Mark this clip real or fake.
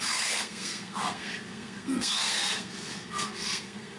fake